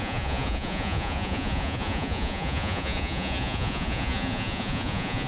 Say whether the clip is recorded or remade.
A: remade